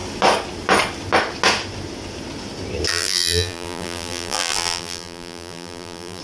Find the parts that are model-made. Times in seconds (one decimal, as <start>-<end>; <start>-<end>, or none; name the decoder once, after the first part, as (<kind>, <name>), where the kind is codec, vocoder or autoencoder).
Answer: 2.9-6.2 (vocoder, BigVGAN v2)